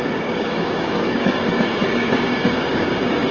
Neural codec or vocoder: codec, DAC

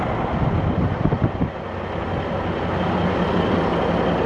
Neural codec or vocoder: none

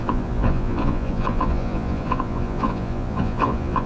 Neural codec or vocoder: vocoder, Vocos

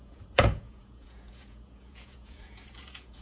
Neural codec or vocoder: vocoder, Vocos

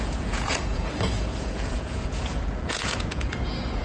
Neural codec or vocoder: vocoder, Vocos